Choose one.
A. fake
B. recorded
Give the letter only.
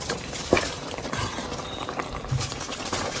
A